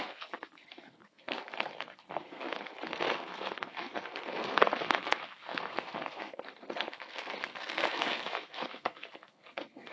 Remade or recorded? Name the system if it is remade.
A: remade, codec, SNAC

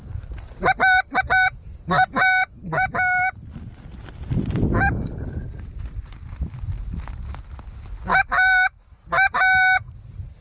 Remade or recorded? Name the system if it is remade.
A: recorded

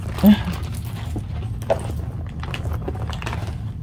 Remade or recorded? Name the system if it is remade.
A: recorded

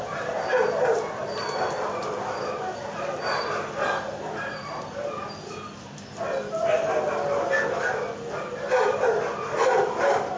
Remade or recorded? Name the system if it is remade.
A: recorded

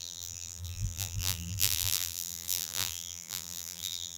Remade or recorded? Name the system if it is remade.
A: remade, vocoder, BigVGAN v2